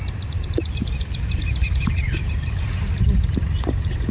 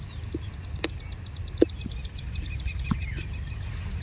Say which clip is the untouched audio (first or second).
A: second